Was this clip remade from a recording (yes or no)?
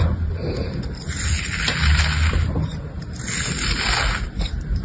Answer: yes